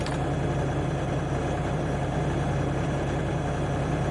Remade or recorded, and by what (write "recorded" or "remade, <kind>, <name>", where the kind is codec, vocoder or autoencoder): recorded